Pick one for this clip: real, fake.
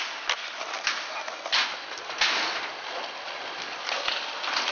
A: real